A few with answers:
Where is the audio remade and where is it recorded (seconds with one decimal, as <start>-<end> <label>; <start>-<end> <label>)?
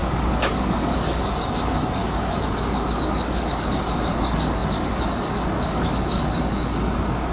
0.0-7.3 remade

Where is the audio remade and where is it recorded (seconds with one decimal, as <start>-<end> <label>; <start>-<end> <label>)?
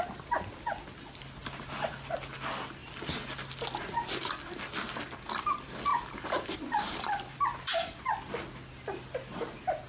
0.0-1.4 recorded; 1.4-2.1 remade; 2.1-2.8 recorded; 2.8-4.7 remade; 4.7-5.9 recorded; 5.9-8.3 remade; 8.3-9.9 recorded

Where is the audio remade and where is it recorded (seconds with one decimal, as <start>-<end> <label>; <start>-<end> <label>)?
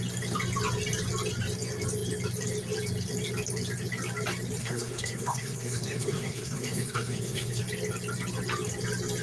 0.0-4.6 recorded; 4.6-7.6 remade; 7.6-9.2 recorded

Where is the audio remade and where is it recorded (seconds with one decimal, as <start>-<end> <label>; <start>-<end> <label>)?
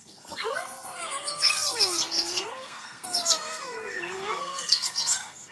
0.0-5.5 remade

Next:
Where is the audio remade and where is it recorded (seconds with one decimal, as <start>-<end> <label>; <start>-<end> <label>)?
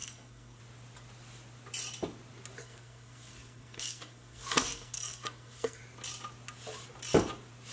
0.0-0.6 remade; 0.6-2.6 recorded; 2.6-5.8 remade; 5.8-7.7 recorded